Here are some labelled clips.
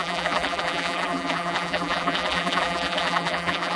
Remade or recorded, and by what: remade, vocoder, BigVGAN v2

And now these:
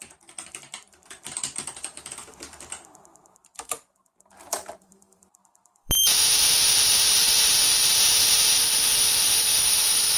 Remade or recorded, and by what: remade, vocoder, BigVGAN v2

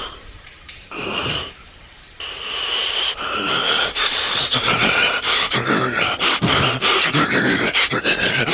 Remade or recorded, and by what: remade, vocoder, BigVGAN v2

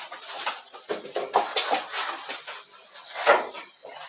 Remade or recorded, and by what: recorded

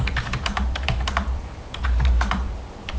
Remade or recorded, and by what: remade, vocoder, BigVGAN v2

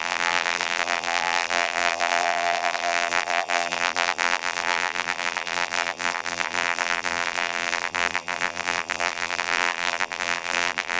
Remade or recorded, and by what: remade, vocoder, BigVGAN v2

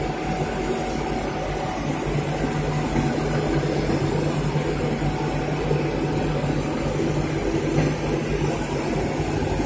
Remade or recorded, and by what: recorded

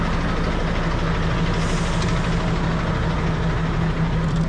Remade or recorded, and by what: recorded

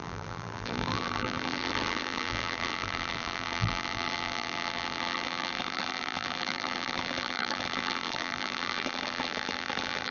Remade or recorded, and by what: remade, vocoder, BigVGAN v2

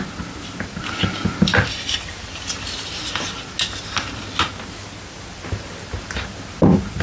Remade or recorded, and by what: recorded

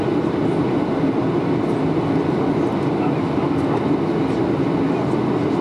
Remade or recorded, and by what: recorded